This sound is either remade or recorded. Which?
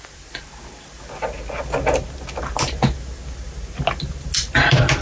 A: recorded